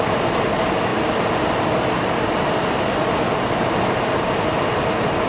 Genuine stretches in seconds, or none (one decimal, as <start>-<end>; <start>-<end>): 0.0-5.3